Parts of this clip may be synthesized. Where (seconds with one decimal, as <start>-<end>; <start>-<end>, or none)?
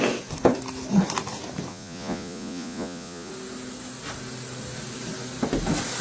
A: 1.7-3.3